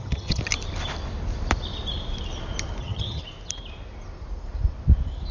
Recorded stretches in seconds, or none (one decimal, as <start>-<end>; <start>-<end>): 0.4-2.8; 3.2-5.3